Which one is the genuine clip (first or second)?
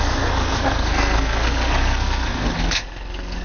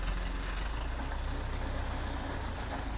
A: second